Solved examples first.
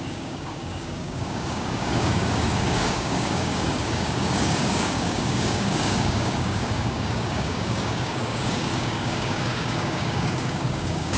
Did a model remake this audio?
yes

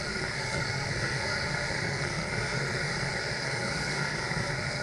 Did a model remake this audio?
yes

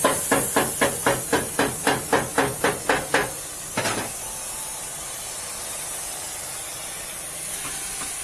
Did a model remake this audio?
no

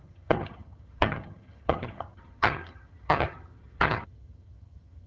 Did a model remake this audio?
yes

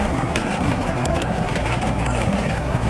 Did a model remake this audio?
yes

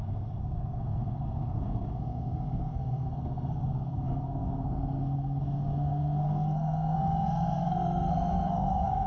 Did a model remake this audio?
yes